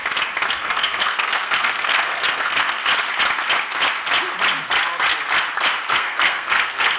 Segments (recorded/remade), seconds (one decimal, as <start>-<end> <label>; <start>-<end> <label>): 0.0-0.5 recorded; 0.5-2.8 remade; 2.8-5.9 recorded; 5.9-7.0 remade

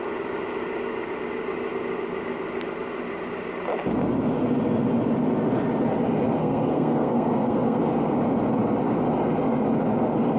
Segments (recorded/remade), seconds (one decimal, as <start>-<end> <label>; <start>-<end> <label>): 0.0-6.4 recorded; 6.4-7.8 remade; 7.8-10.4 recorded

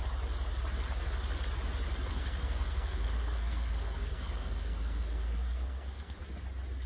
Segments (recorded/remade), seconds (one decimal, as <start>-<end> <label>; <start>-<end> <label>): 0.0-2.1 recorded; 2.1-6.2 remade; 6.2-6.9 recorded

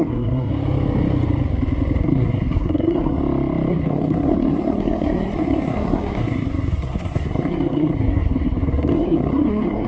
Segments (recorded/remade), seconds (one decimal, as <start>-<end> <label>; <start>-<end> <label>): 0.0-0.5 remade; 0.5-2.0 recorded; 2.0-3.2 remade; 3.2-3.7 recorded; 3.7-9.9 remade

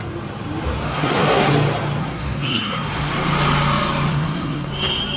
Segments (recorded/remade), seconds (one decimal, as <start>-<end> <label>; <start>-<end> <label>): 0.0-0.9 recorded; 0.9-1.5 remade; 1.5-2.0 recorded; 2.0-3.1 remade; 3.1-4.1 recorded; 4.1-4.7 remade; 4.7-5.2 recorded

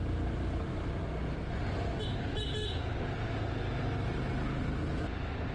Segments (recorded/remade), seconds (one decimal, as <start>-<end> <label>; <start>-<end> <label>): 0.0-5.5 recorded